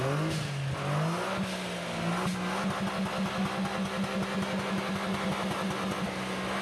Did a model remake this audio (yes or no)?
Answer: no